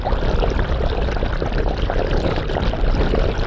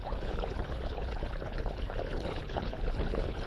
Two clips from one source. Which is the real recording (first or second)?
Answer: first